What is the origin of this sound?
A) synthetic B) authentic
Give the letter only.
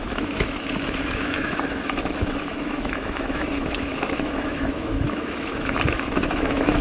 A